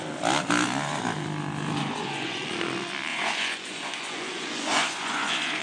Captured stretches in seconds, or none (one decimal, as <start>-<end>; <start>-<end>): 0.0-1.8; 2.4-3.1